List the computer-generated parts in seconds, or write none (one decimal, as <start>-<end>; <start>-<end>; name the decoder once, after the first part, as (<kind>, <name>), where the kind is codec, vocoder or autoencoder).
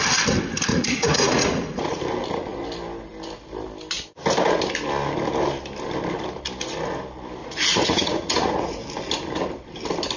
0.7-2.0 (vocoder, Vocos); 7.4-8.8